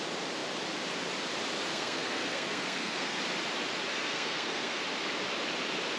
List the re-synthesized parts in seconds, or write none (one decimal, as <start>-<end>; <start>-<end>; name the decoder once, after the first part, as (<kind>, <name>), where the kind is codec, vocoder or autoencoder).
1.7-3.2 (codec, SNAC); 3.9-4.8